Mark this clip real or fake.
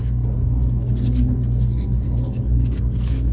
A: fake